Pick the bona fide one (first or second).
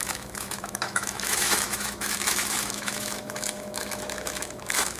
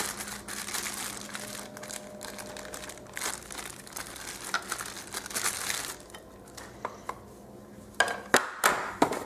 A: second